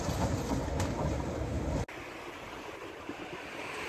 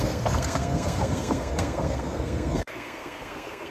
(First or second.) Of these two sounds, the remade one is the second